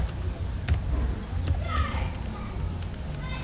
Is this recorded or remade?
recorded